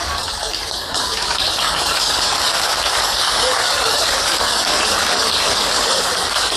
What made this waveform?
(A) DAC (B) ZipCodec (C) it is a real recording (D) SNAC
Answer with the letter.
A